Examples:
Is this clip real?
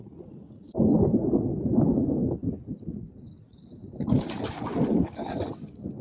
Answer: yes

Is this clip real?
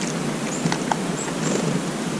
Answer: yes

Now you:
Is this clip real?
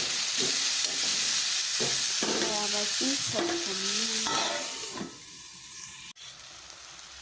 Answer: yes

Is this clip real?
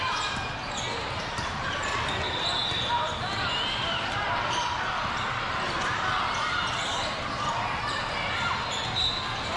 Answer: yes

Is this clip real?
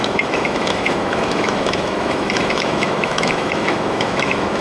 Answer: no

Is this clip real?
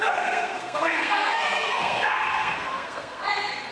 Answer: no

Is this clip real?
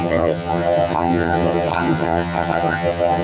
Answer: no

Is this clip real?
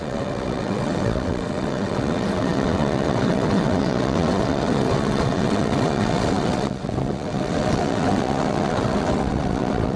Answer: no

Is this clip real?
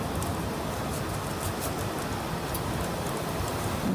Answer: yes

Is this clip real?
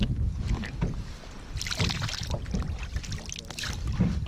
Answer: yes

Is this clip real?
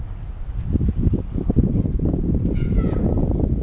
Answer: no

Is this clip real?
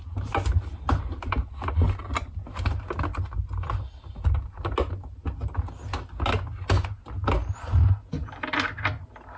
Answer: yes